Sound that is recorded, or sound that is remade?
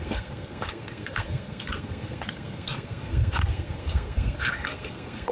remade